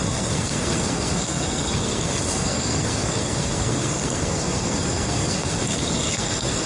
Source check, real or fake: fake